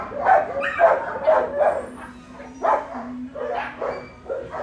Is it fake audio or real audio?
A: real